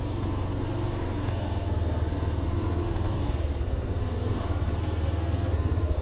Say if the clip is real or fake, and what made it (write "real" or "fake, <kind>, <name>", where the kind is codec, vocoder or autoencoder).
fake, codec, SNAC